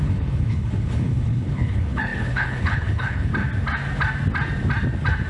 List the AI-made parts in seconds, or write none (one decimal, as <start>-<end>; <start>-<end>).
0.0-3.3